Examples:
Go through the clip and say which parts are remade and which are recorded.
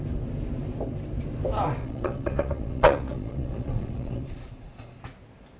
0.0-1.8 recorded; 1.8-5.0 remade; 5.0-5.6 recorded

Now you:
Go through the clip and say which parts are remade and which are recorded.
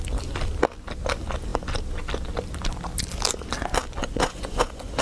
0.0-4.0 recorded; 4.0-5.0 remade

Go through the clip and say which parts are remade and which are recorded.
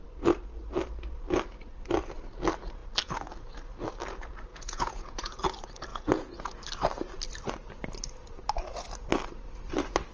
0.0-4.5 recorded; 4.5-5.4 remade; 5.4-5.9 recorded; 5.9-6.6 remade; 6.6-10.1 recorded